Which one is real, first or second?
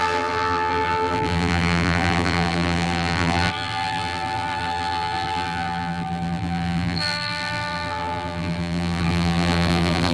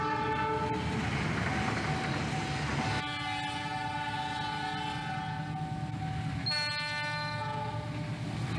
second